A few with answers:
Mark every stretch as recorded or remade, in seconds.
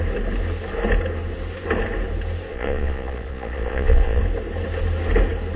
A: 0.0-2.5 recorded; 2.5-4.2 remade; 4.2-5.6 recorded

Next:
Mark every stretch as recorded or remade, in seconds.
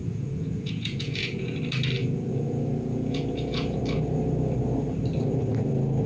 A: 0.0-1.5 remade; 1.5-2.0 recorded; 2.0-3.8 remade; 3.8-6.1 recorded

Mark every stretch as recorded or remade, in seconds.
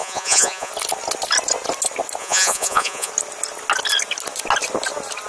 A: 0.0-0.7 remade; 0.7-2.2 recorded; 2.2-3.1 remade; 3.1-5.3 recorded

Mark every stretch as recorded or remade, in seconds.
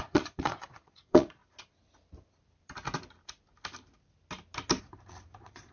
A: 0.0-1.4 remade; 1.4-4.8 recorded; 4.8-5.7 remade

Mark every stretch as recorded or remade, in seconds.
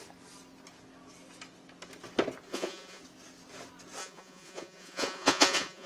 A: 0.0-2.5 recorded; 2.5-3.0 remade; 3.0-4.0 recorded; 4.0-5.9 remade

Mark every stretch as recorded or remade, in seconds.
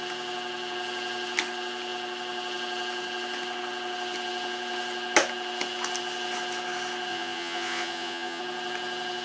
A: 0.0-7.1 recorded; 7.1-8.4 remade; 8.4-9.2 recorded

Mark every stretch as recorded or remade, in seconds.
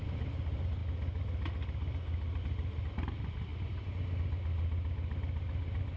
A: 0.0-6.0 recorded